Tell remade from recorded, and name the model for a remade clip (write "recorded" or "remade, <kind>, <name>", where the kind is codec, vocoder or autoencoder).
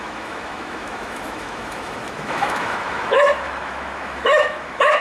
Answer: remade, autoencoder, DAC-VAE